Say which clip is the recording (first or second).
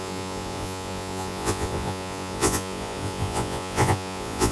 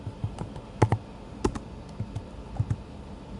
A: second